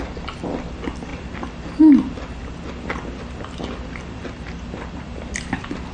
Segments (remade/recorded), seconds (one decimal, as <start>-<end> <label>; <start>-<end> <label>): 0.0-5.9 recorded